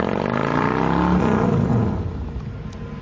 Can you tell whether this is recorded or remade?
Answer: recorded